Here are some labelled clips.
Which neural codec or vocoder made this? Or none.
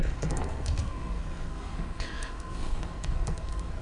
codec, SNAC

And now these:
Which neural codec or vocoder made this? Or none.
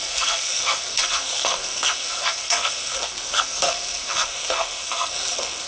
codec, SNAC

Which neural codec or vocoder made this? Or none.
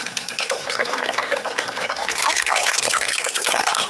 codec, SNAC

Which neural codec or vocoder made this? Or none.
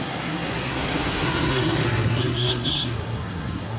codec, SNAC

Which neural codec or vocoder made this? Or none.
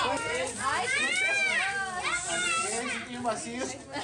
none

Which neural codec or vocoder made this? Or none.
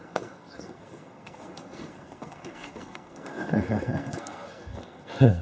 codec, SNAC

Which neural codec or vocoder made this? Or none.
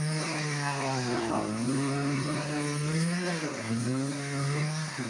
codec, SNAC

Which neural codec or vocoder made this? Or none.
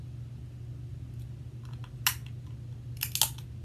none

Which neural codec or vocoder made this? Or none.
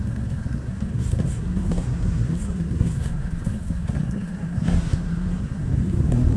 codec, SNAC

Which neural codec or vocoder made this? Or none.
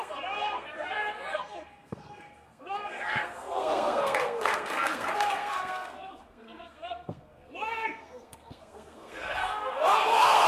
codec, SNAC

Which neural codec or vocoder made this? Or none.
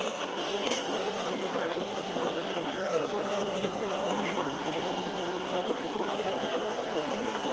codec, SNAC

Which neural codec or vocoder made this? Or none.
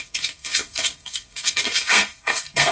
codec, SNAC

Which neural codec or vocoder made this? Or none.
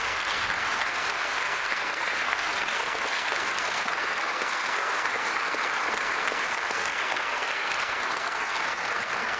codec, SNAC